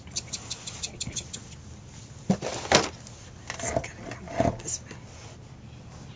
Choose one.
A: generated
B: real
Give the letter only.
B